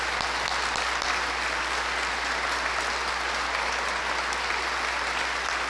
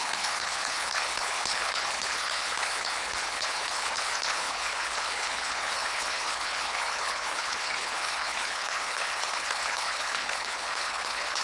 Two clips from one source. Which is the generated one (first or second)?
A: second